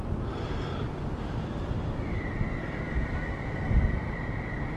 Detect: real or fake real